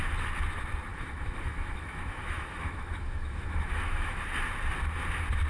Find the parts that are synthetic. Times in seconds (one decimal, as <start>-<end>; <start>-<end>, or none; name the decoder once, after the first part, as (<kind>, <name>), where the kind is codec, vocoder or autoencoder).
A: 0.9-4.2 (autoencoder, DAC-VAE)